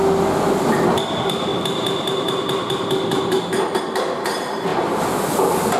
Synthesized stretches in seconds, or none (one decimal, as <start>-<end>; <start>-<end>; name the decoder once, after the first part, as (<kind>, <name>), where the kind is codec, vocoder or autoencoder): none